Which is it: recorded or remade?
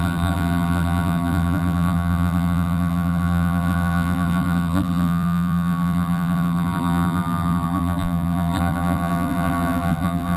remade